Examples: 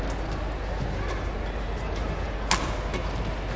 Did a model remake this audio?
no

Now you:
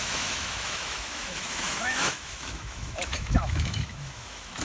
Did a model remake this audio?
yes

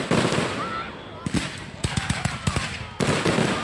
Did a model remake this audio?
no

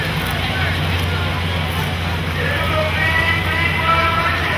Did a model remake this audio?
no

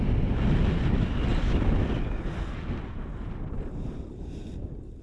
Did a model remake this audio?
no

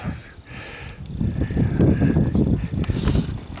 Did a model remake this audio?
no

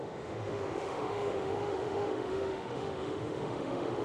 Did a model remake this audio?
yes